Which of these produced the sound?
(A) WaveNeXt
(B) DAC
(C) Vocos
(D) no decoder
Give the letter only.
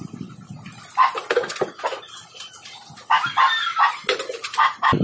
D